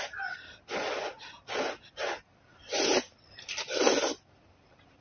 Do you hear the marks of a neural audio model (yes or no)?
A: no